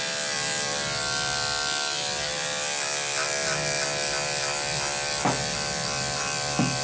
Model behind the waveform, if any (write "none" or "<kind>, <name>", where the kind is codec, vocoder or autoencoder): none